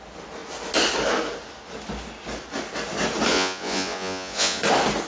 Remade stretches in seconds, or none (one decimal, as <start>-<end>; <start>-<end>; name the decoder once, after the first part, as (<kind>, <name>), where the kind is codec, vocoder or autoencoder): 3.3-4.6 (vocoder, Vocos)